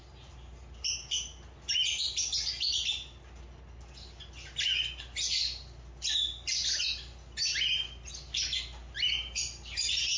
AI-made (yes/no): no